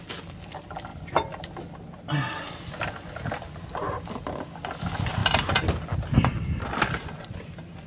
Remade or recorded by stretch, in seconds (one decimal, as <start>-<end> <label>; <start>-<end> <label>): 0.0-7.9 recorded